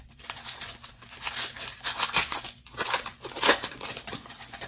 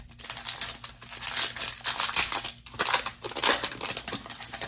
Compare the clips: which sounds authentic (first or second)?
second